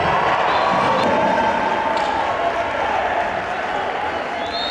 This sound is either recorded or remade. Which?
recorded